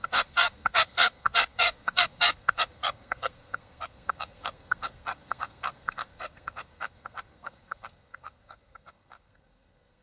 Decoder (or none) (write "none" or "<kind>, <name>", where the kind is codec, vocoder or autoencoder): codec, SNAC